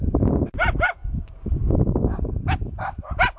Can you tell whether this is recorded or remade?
recorded